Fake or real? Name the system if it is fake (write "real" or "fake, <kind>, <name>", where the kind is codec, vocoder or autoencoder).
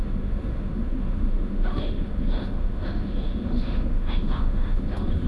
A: fake, autoencoder, DAC-VAE